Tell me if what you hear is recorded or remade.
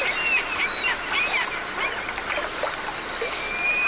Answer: recorded